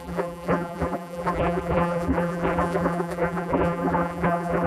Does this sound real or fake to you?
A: fake